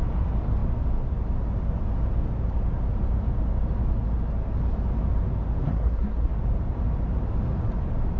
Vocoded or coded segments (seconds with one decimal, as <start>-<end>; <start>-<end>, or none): 5.6-6.3